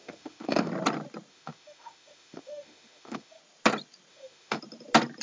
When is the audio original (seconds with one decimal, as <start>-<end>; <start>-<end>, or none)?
0.7-1.3; 3.4-4.1; 4.6-5.2